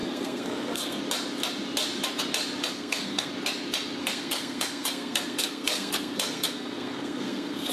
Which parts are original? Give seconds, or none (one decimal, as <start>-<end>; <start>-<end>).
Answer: 1.0-2.7; 3.3-4.0